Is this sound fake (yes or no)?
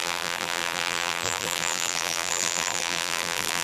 yes